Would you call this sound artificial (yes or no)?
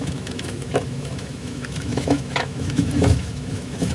yes